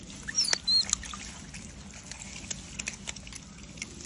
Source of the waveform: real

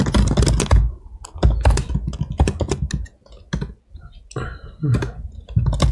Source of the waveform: real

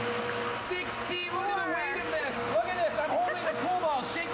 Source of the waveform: real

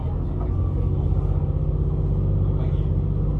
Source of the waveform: real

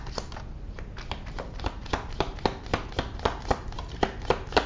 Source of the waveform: real